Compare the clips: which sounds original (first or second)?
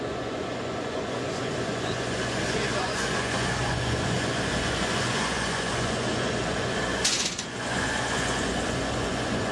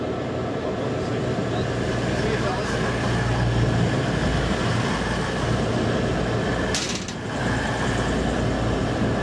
second